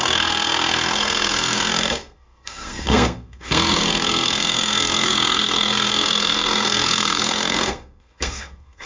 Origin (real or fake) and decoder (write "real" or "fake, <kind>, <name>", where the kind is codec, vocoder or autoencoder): fake, codec, SNAC